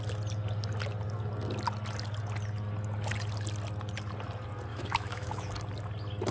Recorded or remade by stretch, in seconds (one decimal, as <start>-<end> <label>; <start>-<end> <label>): 0.0-4.7 recorded; 4.7-5.5 remade; 5.5-6.3 recorded